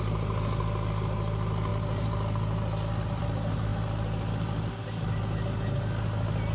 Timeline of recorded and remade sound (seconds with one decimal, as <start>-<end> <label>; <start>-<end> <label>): 0.0-6.5 recorded